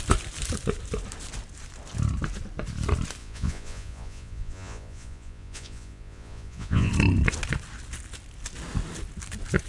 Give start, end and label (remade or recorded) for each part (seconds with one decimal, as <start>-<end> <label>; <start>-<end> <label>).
0.0-3.2 recorded; 3.2-6.9 remade; 6.9-9.7 recorded